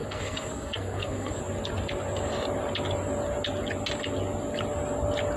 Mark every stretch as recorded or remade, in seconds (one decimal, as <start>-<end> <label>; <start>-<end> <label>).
0.0-1.4 remade; 1.4-5.4 recorded